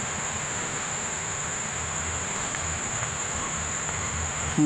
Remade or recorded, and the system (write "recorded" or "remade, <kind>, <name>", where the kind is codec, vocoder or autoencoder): remade, autoencoder, DAC-VAE